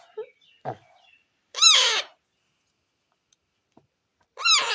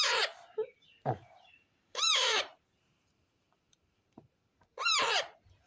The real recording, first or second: first